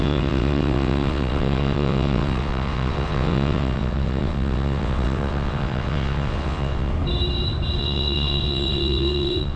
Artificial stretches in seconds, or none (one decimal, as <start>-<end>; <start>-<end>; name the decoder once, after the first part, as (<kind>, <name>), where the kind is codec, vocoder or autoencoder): 0.0-6.9 (vocoder, WaveNeXt); 7.8-9.6